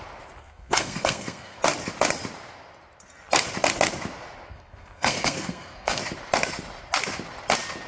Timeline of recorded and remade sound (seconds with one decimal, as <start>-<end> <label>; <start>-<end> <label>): 0.0-0.4 recorded; 0.4-1.6 remade; 1.6-4.5 recorded; 4.5-6.0 remade; 6.0-7.9 recorded